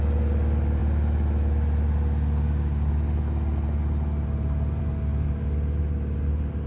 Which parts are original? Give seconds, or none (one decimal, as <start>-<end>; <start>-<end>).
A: 0.0-6.7